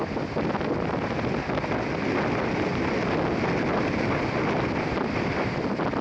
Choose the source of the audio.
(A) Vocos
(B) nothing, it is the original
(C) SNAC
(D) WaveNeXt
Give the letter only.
B